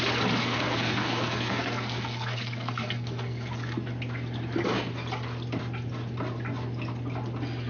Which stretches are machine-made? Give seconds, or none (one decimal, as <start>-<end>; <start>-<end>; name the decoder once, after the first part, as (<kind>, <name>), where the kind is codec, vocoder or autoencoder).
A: 0.4-3.9 (codec, SNAC)